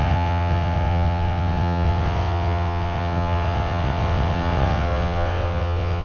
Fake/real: fake